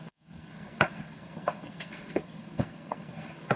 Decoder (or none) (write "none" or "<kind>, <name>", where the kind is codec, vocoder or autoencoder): codec, SNAC